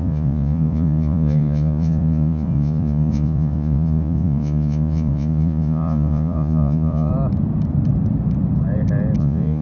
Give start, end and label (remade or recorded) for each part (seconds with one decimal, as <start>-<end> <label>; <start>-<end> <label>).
0.0-7.1 remade; 7.1-9.2 recorded; 9.2-9.6 remade

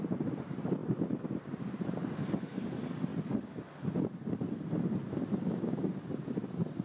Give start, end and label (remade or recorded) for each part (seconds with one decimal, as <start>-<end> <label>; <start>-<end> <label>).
0.0-3.1 remade; 3.1-5.0 recorded; 5.0-6.8 remade